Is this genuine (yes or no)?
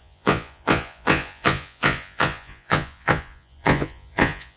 no